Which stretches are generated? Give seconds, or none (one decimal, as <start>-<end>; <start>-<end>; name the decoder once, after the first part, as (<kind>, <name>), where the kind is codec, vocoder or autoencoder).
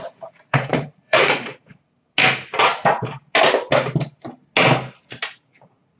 0.0-1.7 (vocoder, Vocos); 5.3-6.0